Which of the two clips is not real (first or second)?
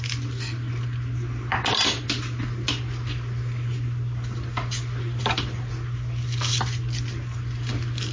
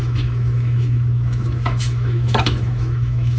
second